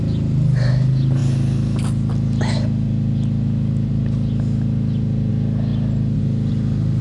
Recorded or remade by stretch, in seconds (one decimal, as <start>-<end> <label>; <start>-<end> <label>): 0.0-7.0 recorded